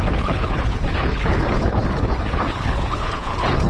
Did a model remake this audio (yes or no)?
yes